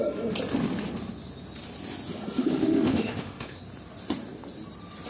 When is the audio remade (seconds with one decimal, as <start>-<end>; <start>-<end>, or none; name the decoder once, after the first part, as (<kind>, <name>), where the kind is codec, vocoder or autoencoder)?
2.4-3.6 (autoencoder, DAC-VAE)